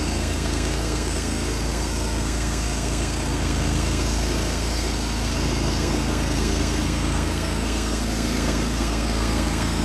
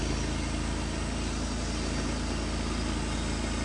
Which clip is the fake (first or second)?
first